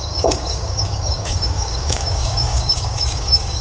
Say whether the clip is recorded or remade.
remade